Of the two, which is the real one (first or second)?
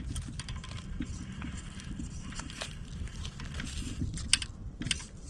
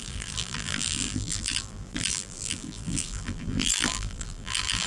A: first